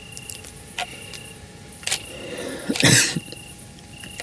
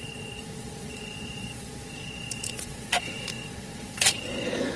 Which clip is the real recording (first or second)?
first